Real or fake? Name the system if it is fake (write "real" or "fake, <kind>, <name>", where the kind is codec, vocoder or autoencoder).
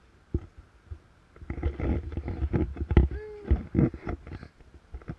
real